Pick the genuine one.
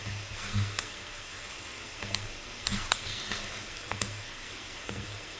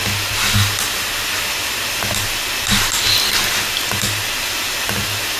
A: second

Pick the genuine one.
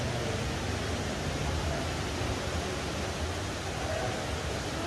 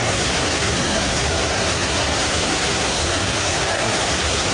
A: first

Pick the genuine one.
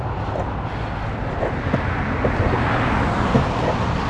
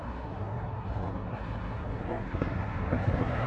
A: first